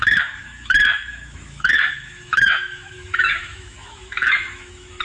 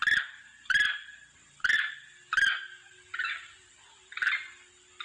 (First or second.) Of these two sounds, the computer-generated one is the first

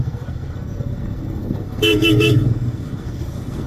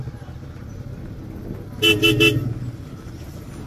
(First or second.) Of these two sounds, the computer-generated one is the first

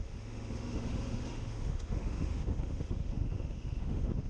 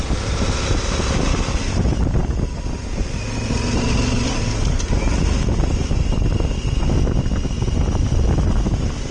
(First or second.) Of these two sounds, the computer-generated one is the first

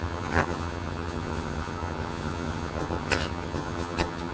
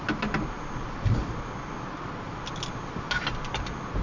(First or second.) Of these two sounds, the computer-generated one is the first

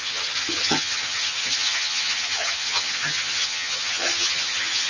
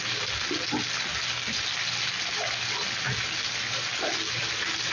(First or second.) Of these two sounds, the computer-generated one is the first